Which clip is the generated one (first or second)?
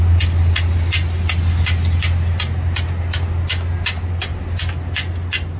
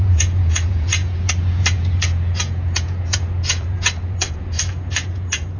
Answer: second